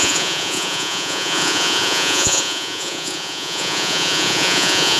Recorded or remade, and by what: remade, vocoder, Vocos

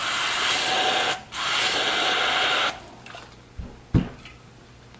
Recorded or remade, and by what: recorded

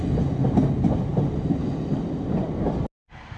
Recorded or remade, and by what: recorded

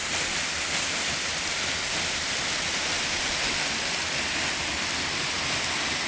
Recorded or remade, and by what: recorded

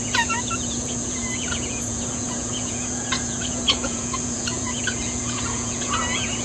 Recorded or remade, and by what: remade, vocoder, Vocos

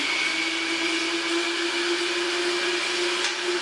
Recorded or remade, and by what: recorded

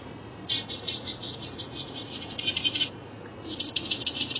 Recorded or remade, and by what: remade, vocoder, Vocos